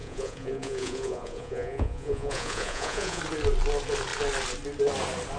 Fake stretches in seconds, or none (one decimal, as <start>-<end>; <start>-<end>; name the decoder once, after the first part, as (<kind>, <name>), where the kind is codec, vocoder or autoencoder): 0.0-3.2 (vocoder, Vocos)